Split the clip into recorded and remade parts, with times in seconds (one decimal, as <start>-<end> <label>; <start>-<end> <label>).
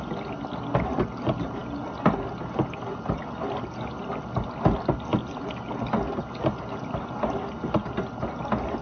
0.0-8.8 recorded